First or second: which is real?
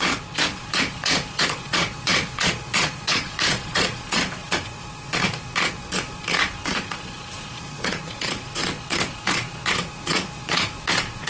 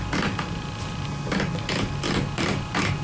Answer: second